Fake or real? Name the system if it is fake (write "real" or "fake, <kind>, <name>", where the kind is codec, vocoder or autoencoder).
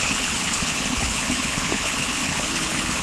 fake, codec, HILCodec